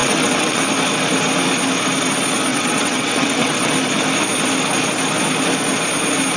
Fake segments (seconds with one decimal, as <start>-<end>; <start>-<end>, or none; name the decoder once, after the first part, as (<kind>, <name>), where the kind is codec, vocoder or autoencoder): 0.0-0.6 (vocoder, WaveNeXt); 2.5-3.7